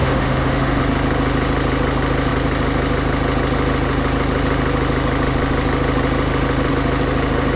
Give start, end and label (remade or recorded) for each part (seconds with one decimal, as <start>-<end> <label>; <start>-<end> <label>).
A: 0.0-0.8 remade; 0.8-7.6 recorded